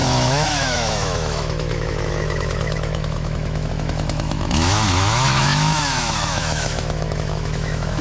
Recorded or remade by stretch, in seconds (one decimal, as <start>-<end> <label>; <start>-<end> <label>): 0.0-8.0 remade